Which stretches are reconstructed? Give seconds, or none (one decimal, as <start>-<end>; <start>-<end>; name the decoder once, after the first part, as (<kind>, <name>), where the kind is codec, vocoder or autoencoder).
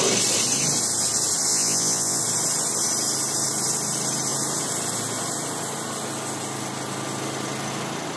1.5-2.2 (vocoder, Vocos)